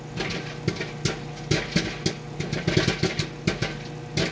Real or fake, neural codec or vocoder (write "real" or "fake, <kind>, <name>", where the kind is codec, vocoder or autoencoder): real